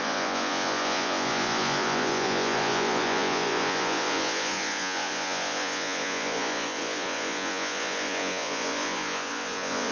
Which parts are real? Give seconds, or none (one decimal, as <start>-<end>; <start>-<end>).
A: none